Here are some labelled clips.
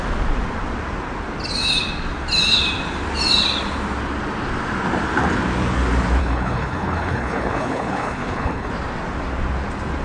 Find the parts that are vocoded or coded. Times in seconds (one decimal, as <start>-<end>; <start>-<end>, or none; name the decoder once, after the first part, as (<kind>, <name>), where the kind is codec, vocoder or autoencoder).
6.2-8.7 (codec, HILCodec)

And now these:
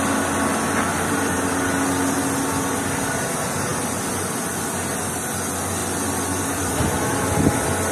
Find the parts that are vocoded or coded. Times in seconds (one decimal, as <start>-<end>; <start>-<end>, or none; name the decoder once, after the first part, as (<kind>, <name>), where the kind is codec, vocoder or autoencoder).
0.9-1.5 (vocoder, BigVGAN v2); 5.8-6.7

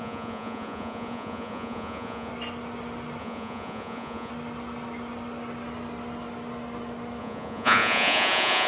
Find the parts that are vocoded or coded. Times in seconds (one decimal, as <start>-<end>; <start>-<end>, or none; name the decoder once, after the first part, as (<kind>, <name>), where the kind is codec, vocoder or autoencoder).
0.0-2.3 (vocoder, Vocos); 3.2-4.3; 7.2-8.7